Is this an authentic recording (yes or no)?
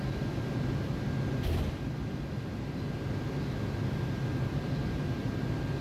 yes